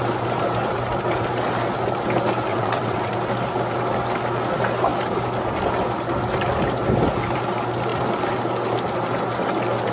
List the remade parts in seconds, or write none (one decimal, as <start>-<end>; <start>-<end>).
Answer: 2.5-3.1

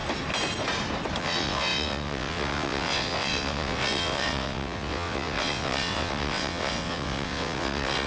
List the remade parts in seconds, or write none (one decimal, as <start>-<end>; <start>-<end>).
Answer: 1.2-8.1

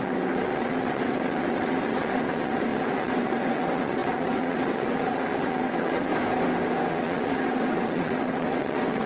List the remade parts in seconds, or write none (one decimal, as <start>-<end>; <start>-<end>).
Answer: 0.0-6.1; 6.9-9.1

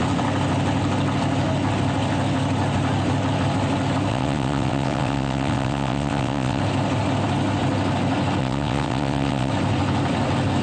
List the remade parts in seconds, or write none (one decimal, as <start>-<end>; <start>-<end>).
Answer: 4.1-6.6; 8.4-9.5

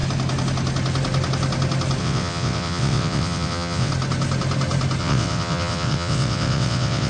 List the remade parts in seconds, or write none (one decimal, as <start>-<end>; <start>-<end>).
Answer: 2.0-3.9; 5.0-7.1